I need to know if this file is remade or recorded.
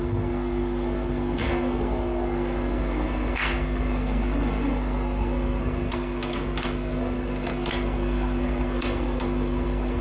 remade